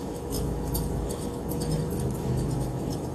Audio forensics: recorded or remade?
remade